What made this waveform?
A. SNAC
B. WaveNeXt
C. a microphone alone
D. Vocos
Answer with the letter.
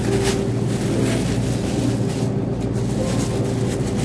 C